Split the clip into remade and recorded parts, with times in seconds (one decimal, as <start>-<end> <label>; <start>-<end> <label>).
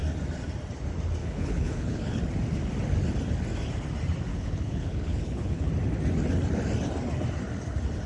0.0-1.2 recorded; 1.2-2.2 remade; 2.2-4.3 recorded; 4.3-5.7 remade; 5.7-8.1 recorded